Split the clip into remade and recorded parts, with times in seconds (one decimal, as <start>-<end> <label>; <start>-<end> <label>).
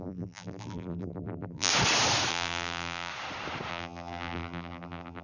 0.0-1.7 remade; 1.7-2.3 recorded; 2.3-3.1 remade; 3.1-3.7 recorded; 3.7-5.2 remade